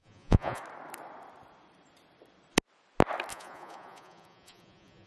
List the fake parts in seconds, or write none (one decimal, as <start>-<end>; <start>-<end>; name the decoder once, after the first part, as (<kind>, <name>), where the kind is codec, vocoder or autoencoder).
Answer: 0.0-0.6 (vocoder, Vocos); 3.3-5.1